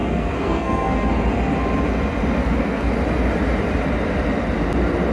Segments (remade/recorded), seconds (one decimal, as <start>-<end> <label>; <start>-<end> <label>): 0.0-1.1 remade; 1.1-2.4 recorded; 2.4-2.9 remade; 2.9-5.1 recorded